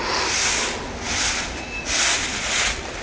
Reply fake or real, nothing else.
real